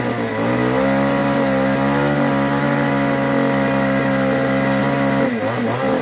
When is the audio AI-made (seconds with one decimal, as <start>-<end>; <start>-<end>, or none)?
none